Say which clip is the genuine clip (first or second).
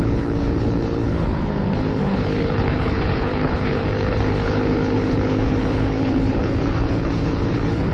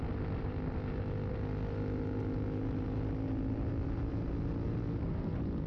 second